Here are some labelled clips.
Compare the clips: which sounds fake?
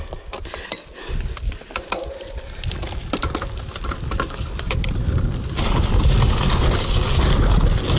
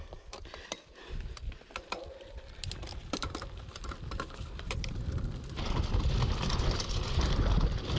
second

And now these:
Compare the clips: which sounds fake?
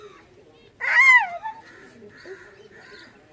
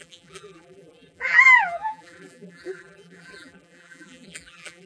second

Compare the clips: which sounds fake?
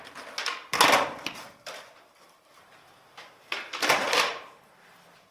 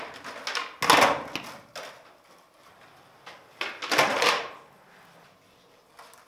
first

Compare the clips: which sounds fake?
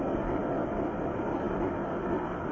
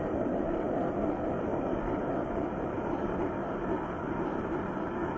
second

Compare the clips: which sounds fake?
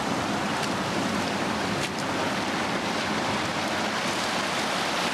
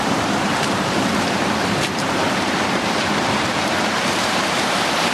second